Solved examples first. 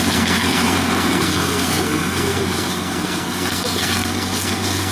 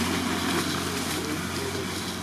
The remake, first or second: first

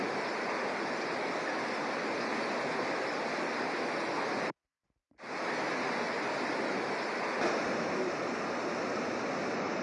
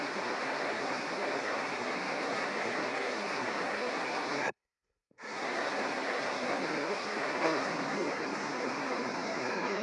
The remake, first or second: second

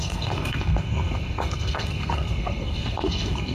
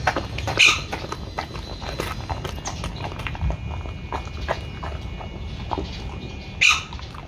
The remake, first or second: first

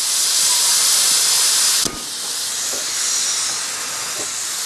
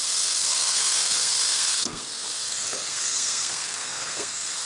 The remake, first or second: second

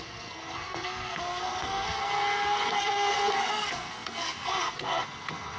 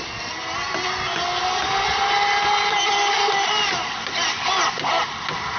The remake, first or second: first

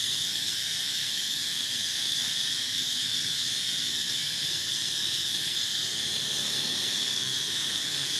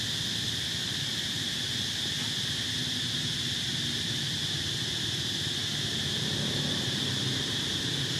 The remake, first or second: first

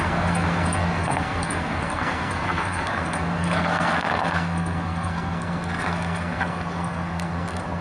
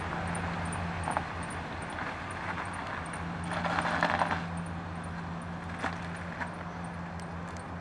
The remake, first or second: first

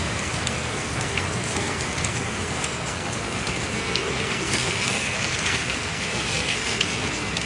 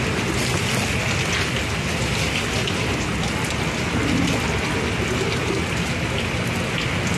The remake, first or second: first